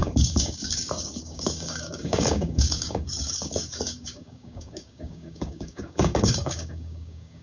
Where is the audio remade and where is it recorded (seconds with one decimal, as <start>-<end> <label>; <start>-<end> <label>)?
0.0-7.4 remade

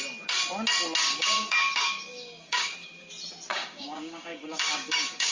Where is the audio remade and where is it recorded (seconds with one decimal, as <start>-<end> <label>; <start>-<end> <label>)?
0.0-1.0 recorded; 1.0-3.1 remade; 3.1-3.5 recorded; 3.5-5.3 remade